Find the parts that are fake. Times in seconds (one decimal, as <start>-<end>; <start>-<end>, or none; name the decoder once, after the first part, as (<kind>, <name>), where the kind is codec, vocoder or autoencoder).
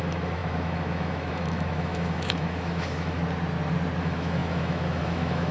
0.0-3.2 (autoencoder, DAC-VAE); 4.0-5.5